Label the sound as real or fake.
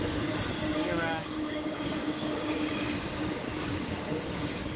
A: fake